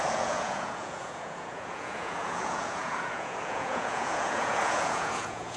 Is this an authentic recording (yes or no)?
no